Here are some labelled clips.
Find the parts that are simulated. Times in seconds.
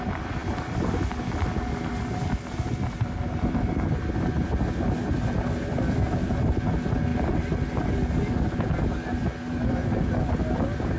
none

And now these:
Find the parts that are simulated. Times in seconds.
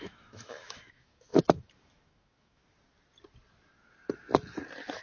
0.0-2.6 (autoencoder, DAC-VAE)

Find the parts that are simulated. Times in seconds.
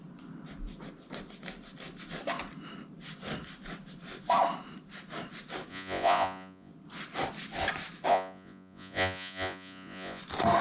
5.7-6.7 (vocoder, Vocos); 8.1-10.2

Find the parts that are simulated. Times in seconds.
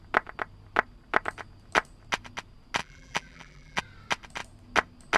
2.8-3.8 (vocoder, BigVGAN v2)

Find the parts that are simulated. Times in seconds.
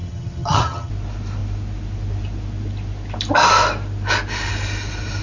0.0-0.9 (vocoder, HiFi-GAN)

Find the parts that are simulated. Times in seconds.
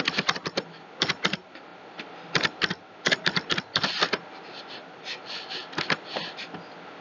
none